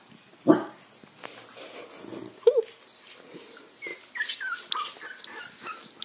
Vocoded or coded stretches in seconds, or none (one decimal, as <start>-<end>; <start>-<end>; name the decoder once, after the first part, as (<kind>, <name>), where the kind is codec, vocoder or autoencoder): none